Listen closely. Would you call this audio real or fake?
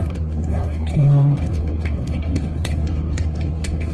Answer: fake